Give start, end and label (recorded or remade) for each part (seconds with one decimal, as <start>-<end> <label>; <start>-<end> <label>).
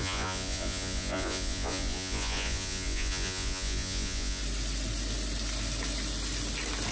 0.0-4.4 remade; 4.4-6.9 recorded